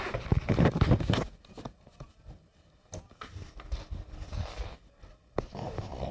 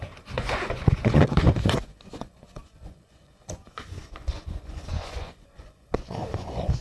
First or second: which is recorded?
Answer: first